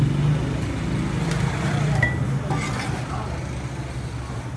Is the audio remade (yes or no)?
no